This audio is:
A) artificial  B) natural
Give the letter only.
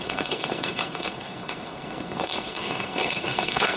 A